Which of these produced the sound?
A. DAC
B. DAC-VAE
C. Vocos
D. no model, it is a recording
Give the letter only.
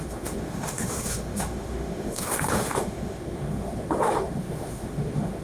B